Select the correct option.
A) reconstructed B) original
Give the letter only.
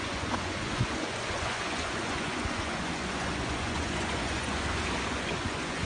A